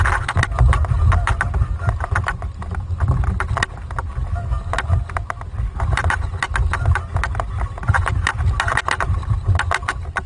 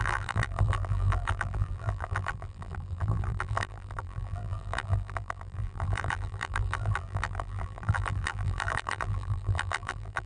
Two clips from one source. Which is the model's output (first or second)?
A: second